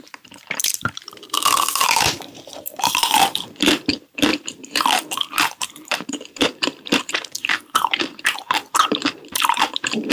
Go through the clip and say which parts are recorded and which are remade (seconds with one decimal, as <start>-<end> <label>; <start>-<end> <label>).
0.0-10.1 remade